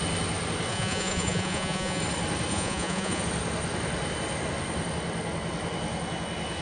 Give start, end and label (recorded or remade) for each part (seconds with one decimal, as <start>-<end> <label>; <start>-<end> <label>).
0.0-0.7 recorded; 0.7-2.0 remade; 2.0-2.5 recorded; 2.5-3.2 remade; 3.2-6.6 recorded